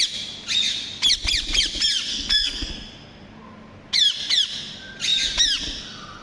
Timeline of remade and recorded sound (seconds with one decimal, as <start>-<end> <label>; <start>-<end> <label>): 0.0-2.1 recorded; 2.1-2.7 remade; 2.7-6.2 recorded